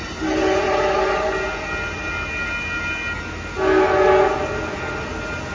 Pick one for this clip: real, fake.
real